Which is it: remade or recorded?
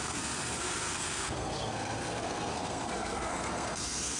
remade